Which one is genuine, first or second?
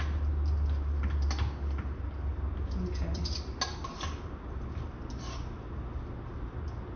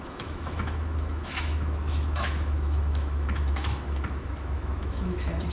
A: first